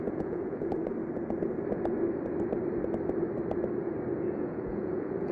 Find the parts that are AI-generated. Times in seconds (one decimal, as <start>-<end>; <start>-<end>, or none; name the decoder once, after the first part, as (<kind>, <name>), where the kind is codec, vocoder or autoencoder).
0.0-1.0 (vocoder, Vocos); 4.2-5.3